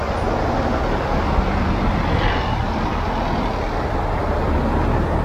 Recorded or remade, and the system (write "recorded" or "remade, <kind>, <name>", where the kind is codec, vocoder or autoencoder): recorded